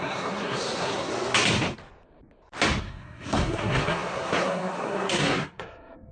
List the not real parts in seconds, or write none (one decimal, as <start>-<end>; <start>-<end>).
0.0-1.1; 2.8-6.1